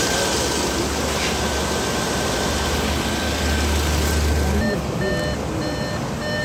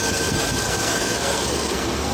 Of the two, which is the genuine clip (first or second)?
first